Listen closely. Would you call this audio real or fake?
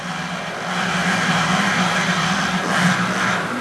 real